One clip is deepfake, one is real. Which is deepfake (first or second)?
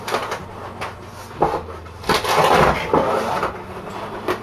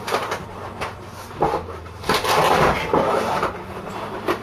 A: second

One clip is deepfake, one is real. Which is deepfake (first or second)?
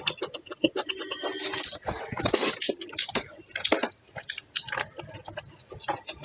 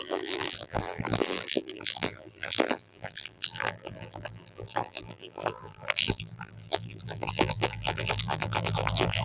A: second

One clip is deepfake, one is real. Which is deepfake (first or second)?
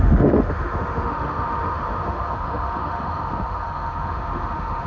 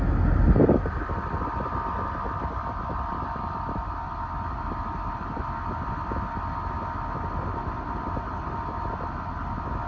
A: first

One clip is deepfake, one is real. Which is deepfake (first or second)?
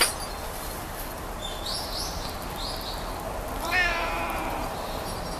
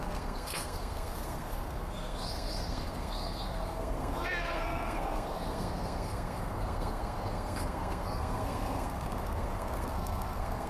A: second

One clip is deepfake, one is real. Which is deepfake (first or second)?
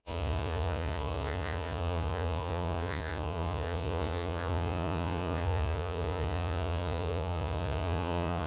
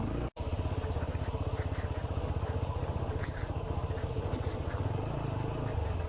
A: first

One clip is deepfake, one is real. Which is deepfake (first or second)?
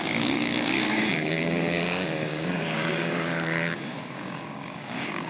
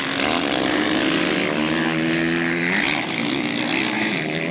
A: first